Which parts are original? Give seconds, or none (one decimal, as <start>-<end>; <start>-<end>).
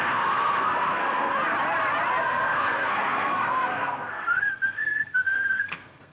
1.3-2.2